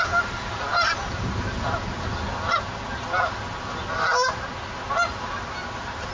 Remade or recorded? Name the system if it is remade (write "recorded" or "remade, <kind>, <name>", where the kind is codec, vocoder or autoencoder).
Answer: recorded